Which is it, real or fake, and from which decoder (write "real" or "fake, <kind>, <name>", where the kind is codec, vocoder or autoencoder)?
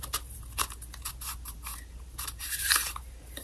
fake, vocoder, BigVGAN v2